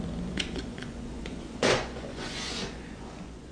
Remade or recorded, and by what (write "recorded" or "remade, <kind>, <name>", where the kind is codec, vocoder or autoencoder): remade, vocoder, Vocos